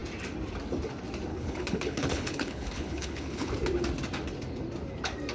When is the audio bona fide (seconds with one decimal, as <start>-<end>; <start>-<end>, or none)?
0.0-1.3; 3.5-5.3